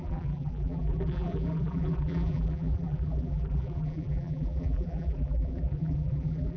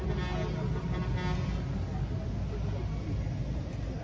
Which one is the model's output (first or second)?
first